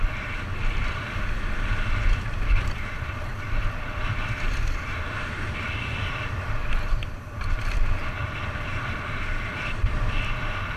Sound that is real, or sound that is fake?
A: real